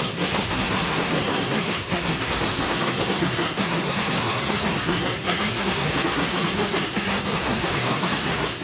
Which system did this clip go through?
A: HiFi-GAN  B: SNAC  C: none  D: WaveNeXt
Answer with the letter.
B